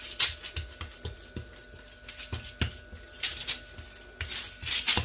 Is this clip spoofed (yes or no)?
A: no